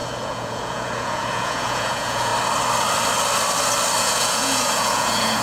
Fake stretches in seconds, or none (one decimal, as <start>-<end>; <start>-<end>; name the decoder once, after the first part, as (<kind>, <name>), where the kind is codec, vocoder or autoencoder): 0.0-2.3 (vocoder, Vocos); 4.0-5.4